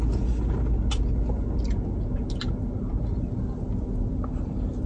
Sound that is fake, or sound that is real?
real